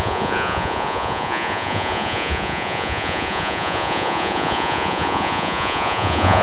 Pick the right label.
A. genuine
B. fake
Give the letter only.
B